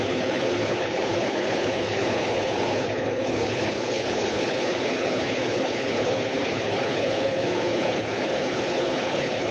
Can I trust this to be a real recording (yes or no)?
no